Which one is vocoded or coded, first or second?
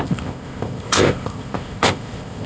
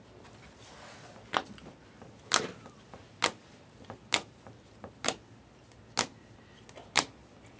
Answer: first